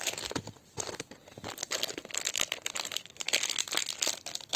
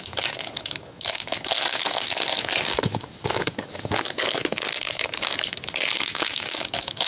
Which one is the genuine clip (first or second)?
first